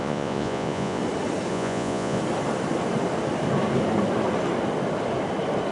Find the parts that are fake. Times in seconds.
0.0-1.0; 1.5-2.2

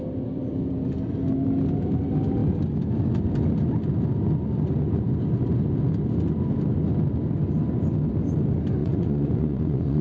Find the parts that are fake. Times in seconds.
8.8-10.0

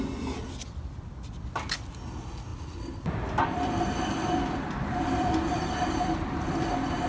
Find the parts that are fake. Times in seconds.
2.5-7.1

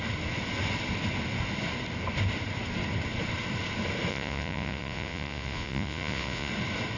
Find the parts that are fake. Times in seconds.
4.1-6.5

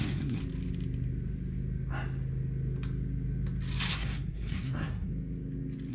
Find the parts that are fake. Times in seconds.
0.0-0.4; 3.9-5.1

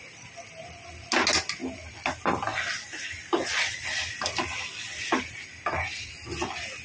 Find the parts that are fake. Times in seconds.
none